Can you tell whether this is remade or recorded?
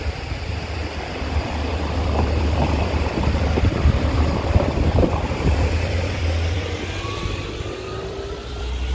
remade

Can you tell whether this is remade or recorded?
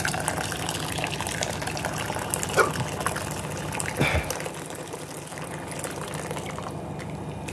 recorded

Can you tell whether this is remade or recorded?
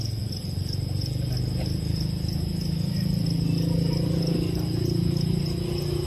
recorded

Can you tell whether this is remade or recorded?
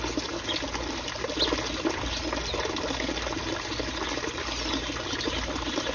recorded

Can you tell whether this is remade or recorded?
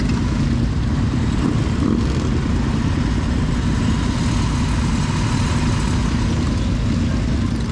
recorded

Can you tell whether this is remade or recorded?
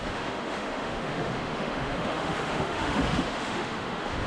remade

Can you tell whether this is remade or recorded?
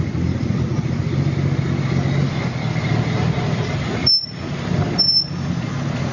recorded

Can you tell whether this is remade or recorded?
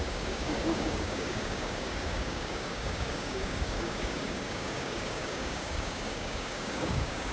remade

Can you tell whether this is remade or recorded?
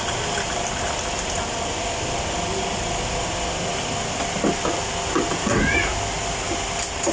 recorded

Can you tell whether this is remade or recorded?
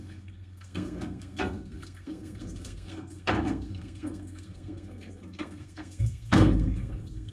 remade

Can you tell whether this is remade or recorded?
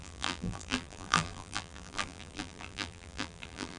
remade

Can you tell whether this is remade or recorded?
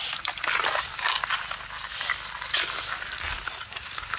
recorded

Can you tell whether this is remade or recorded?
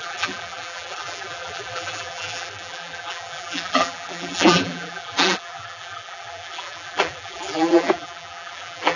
remade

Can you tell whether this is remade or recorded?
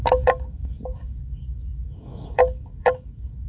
remade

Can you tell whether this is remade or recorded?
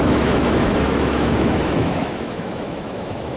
remade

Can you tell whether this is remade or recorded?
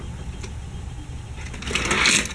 recorded